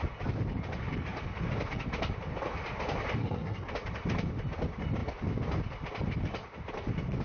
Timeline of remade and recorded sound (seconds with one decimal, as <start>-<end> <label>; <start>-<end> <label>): 0.0-3.2 recorded; 3.2-3.7 remade; 3.7-7.2 recorded